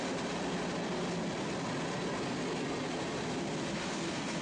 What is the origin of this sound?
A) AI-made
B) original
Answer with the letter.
B